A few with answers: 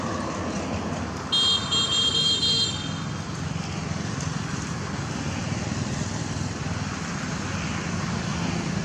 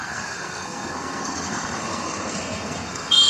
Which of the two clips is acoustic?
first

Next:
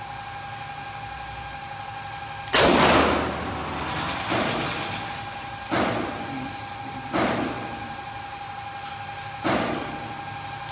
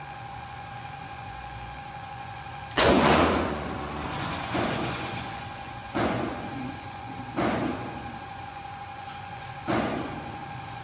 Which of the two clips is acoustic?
first